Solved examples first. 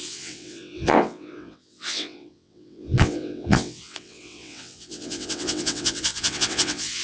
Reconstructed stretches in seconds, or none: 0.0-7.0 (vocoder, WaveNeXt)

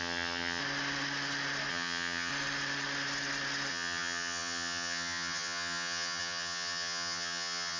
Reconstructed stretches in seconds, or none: 0.0-0.6 (vocoder, HiFi-GAN); 1.7-2.3; 3.7-7.8

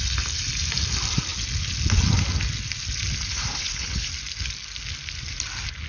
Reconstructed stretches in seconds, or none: 3.3-4.1 (codec, HILCodec)

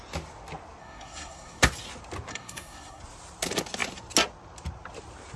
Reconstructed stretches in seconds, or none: 0.8-1.6 (codec, SNAC); 2.3-3.0

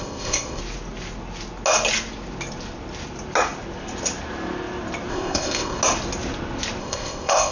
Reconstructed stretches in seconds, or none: 0.0-0.6 (codec, ZipCodec); 5.1-5.8; 6.8-7.5